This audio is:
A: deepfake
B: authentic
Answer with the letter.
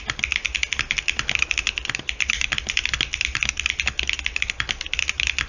B